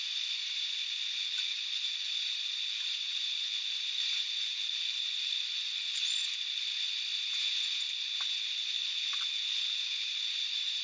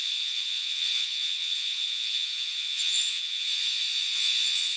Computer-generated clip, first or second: second